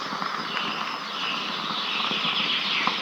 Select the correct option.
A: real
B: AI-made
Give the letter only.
A